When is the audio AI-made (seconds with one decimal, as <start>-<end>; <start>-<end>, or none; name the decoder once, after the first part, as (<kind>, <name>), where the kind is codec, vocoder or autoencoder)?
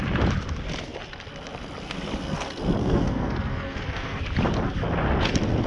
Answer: 2.8-4.2 (codec, SNAC)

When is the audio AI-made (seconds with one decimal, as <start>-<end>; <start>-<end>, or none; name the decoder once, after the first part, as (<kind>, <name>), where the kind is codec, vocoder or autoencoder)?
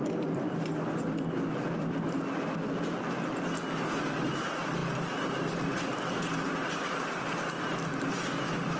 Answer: none